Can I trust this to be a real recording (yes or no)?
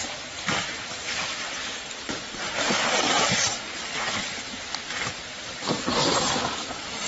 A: yes